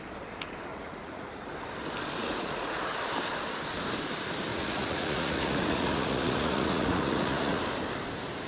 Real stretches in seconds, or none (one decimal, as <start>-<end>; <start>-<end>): 0.0-0.7; 1.4-2.2; 2.8-4.5; 7.6-8.5